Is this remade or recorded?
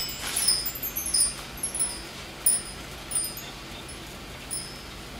recorded